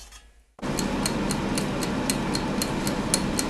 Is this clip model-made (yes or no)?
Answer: no